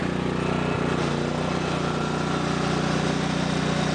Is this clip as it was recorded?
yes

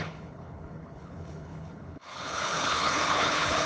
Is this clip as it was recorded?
no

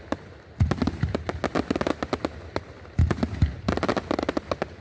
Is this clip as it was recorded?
yes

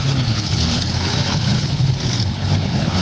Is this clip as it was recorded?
no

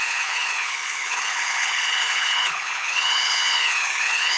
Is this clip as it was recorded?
no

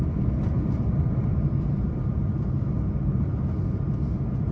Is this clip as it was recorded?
yes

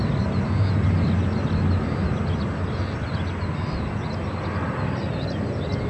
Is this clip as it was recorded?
yes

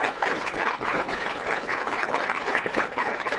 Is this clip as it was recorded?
no